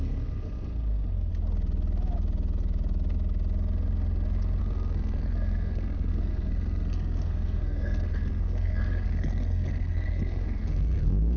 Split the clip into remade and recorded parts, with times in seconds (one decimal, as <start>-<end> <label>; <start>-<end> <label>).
0.0-1.3 remade; 1.3-4.6 recorded; 4.6-11.4 remade